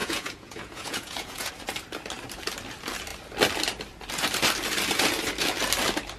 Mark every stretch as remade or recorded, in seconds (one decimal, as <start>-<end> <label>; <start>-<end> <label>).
0.0-1.5 remade; 1.5-6.2 recorded

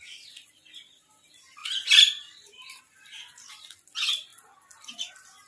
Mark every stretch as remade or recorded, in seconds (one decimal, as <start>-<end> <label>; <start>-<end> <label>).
0.0-1.6 recorded; 1.6-2.8 remade; 2.8-4.3 recorded; 4.3-5.1 remade; 5.1-5.5 recorded

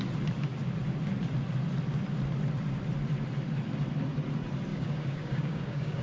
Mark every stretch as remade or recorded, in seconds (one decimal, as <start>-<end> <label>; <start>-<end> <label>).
0.0-4.7 recorded; 4.7-6.0 remade

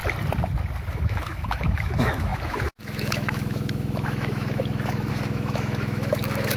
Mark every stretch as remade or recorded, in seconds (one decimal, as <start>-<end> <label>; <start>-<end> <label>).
0.0-0.9 recorded; 0.9-6.6 remade

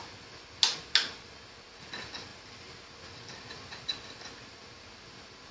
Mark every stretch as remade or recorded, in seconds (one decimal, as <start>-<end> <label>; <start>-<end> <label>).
0.0-5.5 recorded

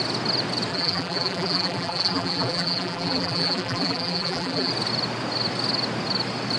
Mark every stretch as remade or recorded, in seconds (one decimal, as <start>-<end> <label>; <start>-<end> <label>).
0.0-0.7 recorded; 0.7-4.7 remade; 4.7-6.6 recorded

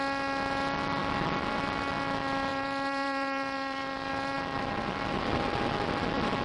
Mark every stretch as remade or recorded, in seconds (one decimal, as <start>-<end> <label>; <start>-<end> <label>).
0.0-2.5 recorded; 2.5-5.2 remade; 5.2-6.4 recorded